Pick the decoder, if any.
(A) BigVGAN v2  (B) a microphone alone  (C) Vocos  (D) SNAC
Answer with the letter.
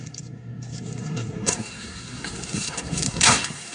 D